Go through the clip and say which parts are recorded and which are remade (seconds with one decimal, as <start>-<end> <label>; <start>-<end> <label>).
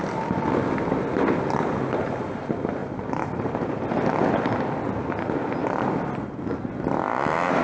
0.0-2.8 recorded; 2.8-3.9 remade; 3.9-7.6 recorded